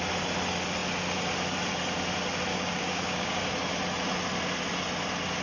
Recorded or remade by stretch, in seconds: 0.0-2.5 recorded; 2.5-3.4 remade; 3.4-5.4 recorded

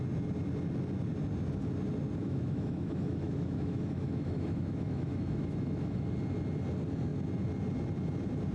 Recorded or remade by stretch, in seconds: 0.0-2.2 recorded; 2.2-6.1 remade; 6.1-8.5 recorded

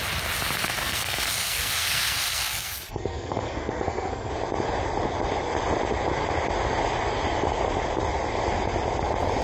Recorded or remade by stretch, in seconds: 0.0-0.8 recorded; 0.8-4.3 remade; 4.3-9.4 recorded

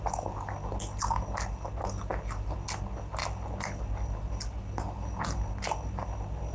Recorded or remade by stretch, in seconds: 0.0-6.5 recorded

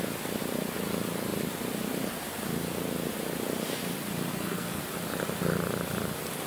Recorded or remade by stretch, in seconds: 0.0-4.3 recorded; 4.3-4.8 remade; 4.8-6.5 recorded

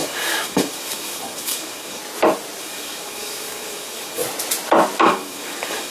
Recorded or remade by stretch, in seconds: 0.0-2.0 remade; 2.0-2.6 recorded; 2.6-4.2 remade; 4.2-5.0 recorded; 5.0-5.9 remade